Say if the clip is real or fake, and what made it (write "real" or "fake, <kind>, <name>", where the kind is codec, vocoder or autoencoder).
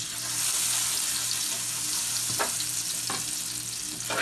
real